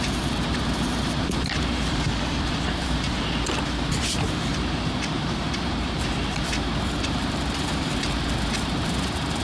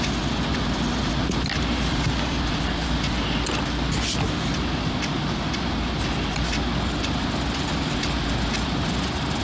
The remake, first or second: first